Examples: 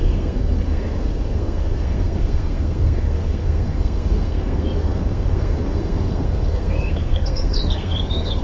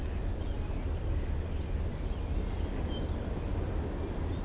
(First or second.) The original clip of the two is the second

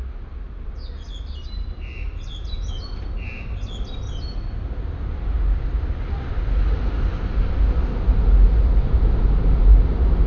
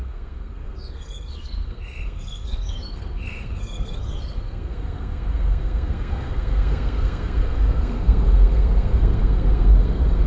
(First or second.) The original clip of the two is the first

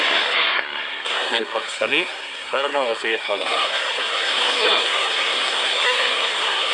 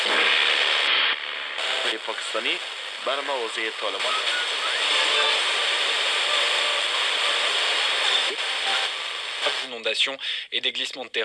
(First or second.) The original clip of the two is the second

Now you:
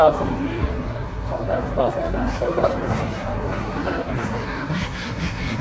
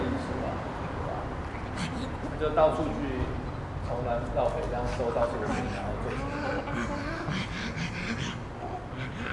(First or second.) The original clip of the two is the second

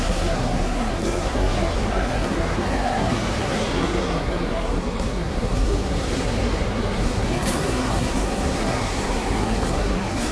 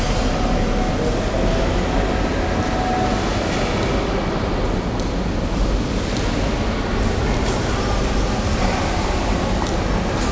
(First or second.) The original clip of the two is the second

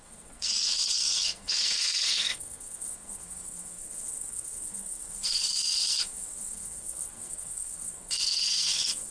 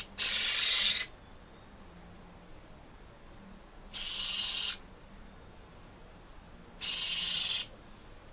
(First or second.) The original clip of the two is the second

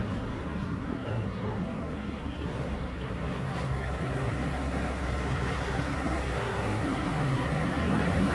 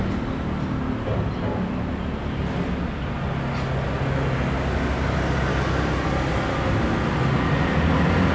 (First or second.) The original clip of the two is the second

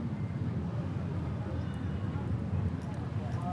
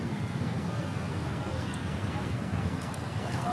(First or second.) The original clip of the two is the first